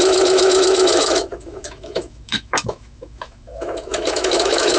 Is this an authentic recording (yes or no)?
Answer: no